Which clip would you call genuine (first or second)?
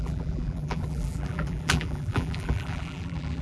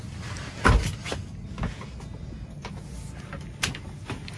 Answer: second